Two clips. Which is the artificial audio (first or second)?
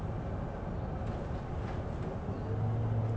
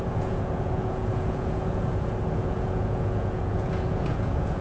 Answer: second